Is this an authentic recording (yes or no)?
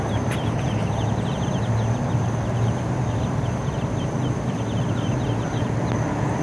yes